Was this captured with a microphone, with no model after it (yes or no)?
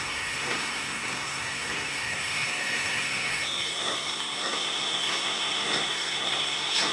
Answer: no